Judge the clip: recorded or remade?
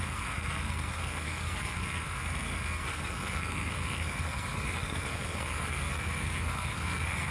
remade